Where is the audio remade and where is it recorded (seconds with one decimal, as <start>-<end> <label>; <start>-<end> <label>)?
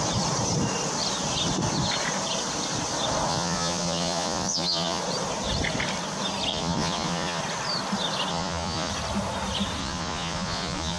0.0-3.3 recorded; 3.3-5.0 remade; 5.0-6.5 recorded; 6.5-7.4 remade; 7.4-8.3 recorded; 8.3-8.9 remade; 8.9-9.8 recorded; 9.8-11.0 remade